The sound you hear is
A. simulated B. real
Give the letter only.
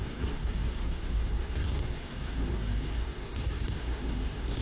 A